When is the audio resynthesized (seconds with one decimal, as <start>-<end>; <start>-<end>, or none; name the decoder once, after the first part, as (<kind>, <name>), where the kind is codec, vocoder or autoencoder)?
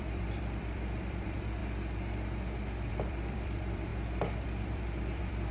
0.0-1.6 (vocoder, BigVGAN v2); 2.9-5.5